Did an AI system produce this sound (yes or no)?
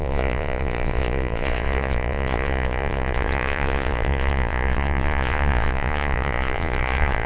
yes